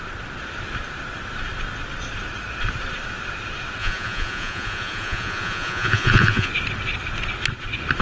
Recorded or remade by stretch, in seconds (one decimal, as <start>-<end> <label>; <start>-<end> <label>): 0.0-3.8 recorded; 3.8-6.5 remade; 6.5-8.0 recorded